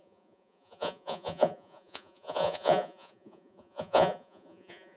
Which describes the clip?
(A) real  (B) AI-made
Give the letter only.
B